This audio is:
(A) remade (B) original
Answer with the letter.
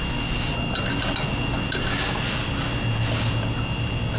B